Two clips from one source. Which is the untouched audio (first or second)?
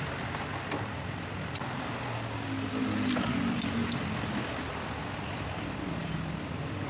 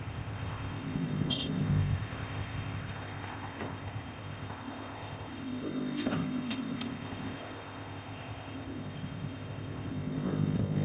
first